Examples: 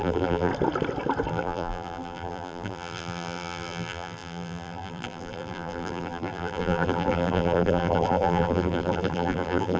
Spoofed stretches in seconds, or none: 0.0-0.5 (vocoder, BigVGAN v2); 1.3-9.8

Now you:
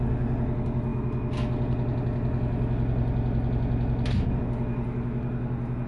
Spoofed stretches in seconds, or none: none

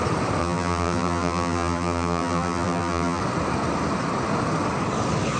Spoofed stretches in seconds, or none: 0.4-3.2 (vocoder, BigVGAN v2)

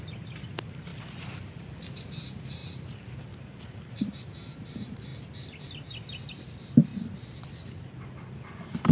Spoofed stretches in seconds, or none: 0.0-5.1 (vocoder, BigVGAN v2); 6.3-6.9; 7.5-8.9

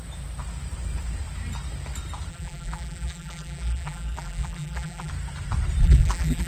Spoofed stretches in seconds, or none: 2.3-5.1 (vocoder, BigVGAN v2); 5.8-6.5

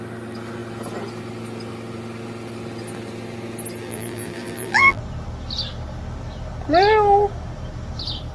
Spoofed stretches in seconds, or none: 3.8-5.0 (vocoder, BigVGAN v2)

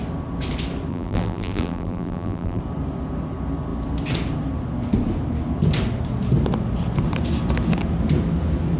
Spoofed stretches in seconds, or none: 0.9-2.6 (vocoder, BigVGAN v2)

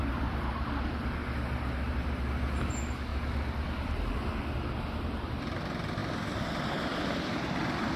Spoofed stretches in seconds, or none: 0.0-1.2 (vocoder, BigVGAN v2); 1.9-3.1; 4.1-6.0